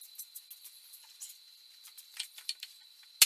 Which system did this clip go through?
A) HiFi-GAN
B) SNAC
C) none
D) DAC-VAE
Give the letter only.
C